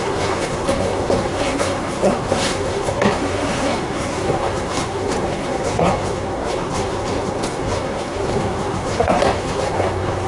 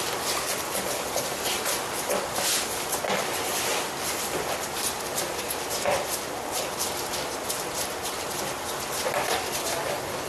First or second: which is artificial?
first